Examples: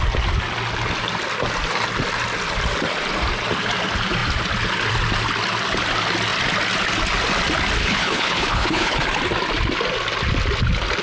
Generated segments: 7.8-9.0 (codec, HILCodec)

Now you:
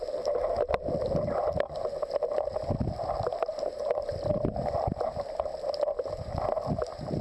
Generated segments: none

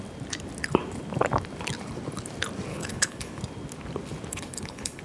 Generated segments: 2.7-3.4 (codec, HILCodec); 4.3-5.0